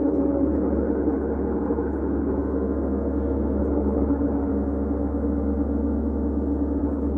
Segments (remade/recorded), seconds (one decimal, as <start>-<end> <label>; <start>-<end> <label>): 0.0-2.4 remade; 2.4-3.6 recorded; 3.6-4.5 remade; 4.5-6.8 recorded; 6.8-7.2 remade